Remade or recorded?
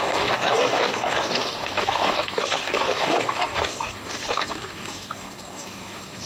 remade